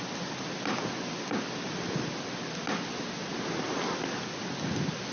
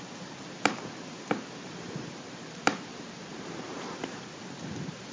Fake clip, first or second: second